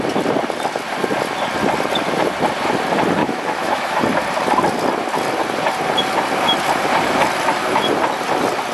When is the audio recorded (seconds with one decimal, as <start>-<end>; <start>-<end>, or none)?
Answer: 0.0-3.2; 4.0-8.7